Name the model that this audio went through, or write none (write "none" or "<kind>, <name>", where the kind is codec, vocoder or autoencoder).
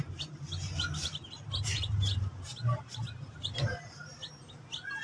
vocoder, BigVGAN v2